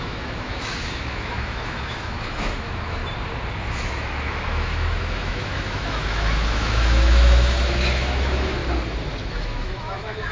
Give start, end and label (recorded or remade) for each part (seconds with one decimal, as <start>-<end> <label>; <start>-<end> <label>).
0.0-3.0 remade; 3.0-3.7 recorded; 3.7-8.6 remade; 8.6-9.3 recorded; 9.3-10.3 remade